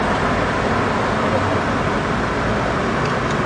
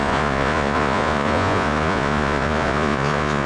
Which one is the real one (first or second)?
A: first